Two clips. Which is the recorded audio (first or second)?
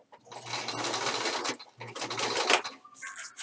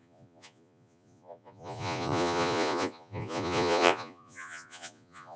first